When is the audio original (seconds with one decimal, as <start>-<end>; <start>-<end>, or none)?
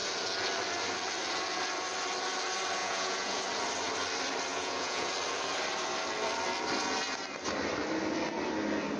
0.0-2.8; 3.4-4.5; 5.1-9.0